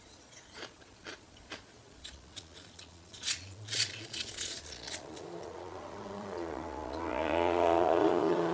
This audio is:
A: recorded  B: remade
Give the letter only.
B